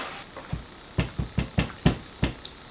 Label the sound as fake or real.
real